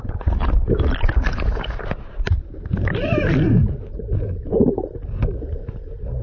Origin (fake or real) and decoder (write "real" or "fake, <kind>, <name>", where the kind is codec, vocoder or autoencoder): real